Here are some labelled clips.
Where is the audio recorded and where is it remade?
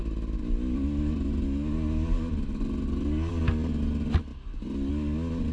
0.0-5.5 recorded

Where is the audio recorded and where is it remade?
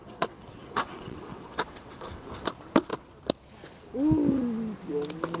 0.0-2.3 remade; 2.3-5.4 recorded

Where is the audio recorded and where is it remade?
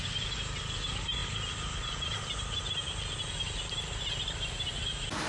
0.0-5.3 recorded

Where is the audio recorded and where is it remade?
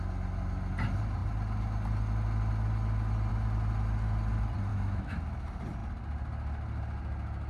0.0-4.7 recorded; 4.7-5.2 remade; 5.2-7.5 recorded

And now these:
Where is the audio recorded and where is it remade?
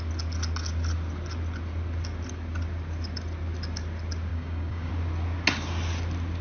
0.0-4.3 recorded; 4.3-4.9 remade; 4.9-6.4 recorded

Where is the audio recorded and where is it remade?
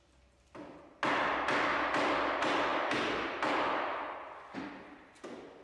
0.0-5.6 recorded